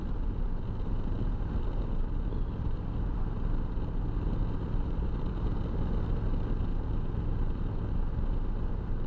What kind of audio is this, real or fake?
real